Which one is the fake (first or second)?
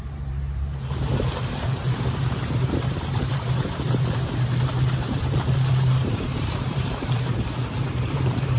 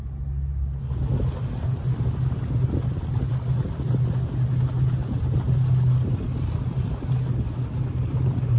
first